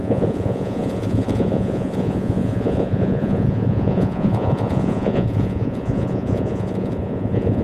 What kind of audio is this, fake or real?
fake